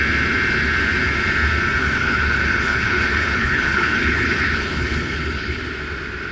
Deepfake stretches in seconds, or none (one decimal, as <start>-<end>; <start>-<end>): 1.8-5.6